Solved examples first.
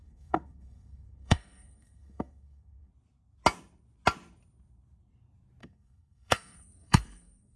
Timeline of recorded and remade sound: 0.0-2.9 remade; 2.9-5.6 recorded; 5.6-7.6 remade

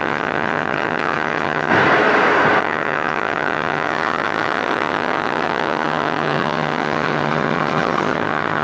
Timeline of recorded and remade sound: 0.0-1.7 remade; 1.7-2.6 recorded; 2.6-8.6 remade

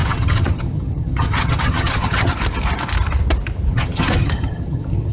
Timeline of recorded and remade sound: 0.0-2.3 remade; 2.3-3.7 recorded; 3.7-5.1 remade

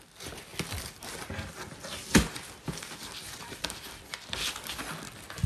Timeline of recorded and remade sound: 0.0-3.2 recorded; 3.2-4.8 remade; 4.8-5.5 recorded